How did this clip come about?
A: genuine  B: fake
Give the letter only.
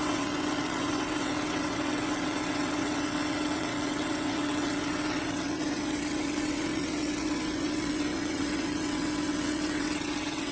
B